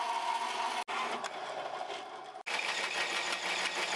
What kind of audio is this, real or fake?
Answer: real